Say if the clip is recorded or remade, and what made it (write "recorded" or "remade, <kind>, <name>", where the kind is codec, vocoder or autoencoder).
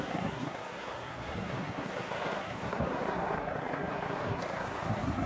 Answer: remade, codec, SNAC